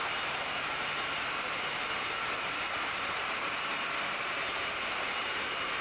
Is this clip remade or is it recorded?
remade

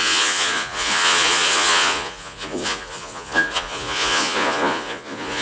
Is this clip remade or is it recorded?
remade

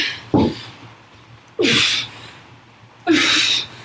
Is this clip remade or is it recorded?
remade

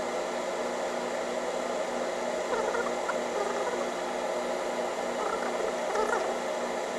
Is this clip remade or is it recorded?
recorded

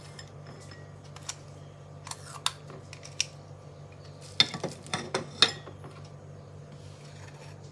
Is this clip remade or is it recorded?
recorded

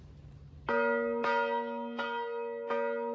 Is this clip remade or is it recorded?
recorded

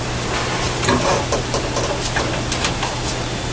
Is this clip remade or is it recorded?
recorded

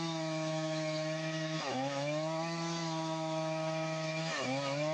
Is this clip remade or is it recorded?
remade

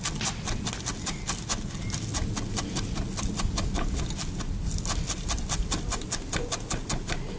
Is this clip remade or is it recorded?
recorded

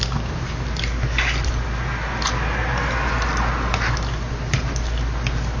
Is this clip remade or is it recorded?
recorded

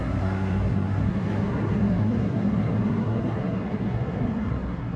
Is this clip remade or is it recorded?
remade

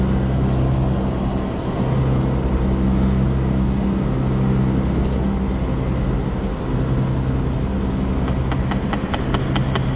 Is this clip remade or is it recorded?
recorded